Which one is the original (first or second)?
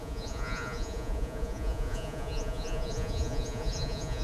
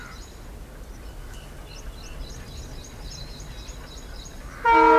second